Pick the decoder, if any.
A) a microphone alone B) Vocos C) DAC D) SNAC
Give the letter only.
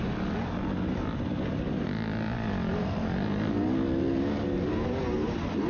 A